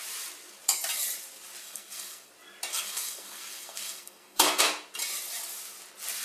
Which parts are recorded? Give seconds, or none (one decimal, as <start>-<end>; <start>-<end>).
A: 0.0-1.6; 2.3-2.7; 4.6-6.2